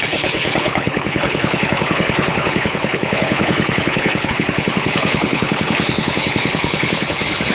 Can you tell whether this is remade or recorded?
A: remade